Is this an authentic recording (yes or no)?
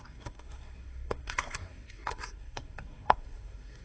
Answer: no